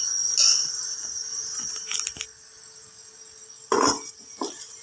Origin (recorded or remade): recorded